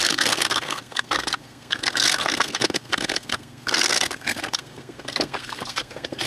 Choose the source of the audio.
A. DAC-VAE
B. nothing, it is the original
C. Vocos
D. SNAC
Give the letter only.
D